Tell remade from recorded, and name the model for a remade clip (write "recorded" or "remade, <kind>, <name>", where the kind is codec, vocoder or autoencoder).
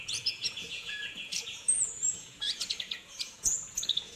remade, vocoder, Vocos